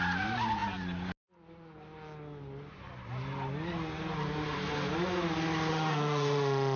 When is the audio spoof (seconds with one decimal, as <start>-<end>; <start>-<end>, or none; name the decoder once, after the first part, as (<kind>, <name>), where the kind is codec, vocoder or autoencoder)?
5.7-6.8 (autoencoder, DAC-VAE)